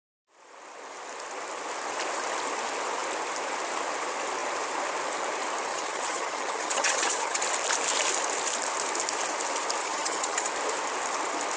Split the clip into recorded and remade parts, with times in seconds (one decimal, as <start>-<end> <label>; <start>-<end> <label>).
0.0-5.7 recorded; 5.7-7.4 remade; 7.4-9.8 recorded; 9.8-10.5 remade; 10.5-11.6 recorded